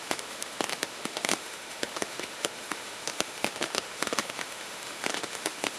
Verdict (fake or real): fake